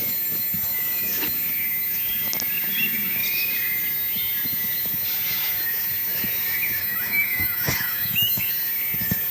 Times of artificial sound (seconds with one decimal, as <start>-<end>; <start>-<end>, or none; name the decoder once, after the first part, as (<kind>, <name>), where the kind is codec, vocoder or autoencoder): 6.8-8.5 (autoencoder, DAC-VAE)